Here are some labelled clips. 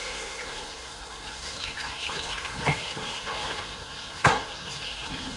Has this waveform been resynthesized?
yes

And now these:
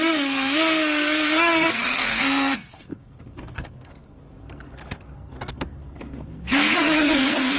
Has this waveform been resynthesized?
yes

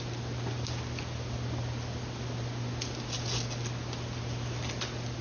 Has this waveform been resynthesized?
no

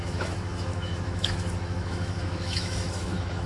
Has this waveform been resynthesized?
yes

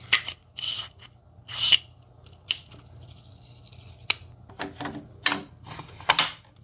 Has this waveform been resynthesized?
no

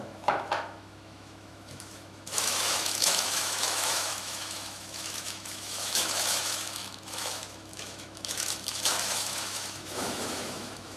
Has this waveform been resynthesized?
yes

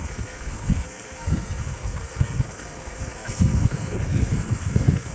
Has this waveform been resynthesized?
yes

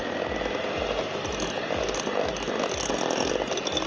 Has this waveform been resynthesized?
no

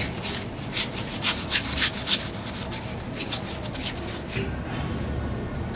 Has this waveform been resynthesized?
no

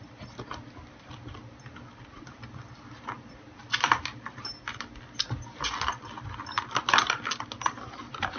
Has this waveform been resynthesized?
no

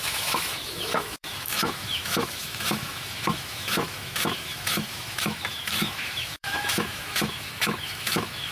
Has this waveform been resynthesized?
yes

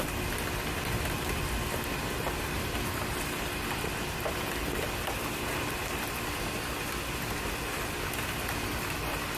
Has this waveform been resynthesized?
no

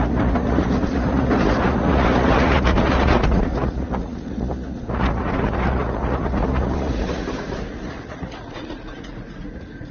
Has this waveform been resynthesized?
yes